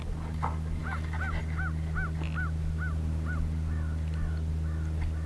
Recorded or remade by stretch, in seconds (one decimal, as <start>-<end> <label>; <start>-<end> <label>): 0.0-5.3 recorded